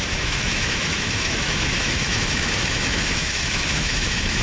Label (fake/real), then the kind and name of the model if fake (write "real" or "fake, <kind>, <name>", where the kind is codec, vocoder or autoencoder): fake, autoencoder, DAC-VAE